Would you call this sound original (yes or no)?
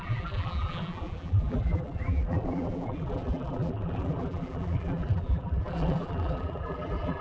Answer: no